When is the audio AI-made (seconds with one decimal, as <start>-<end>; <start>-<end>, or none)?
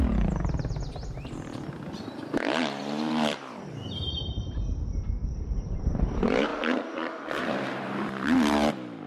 2.8-9.1